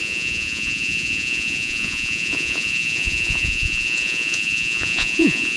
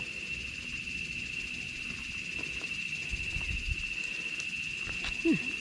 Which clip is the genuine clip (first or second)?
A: second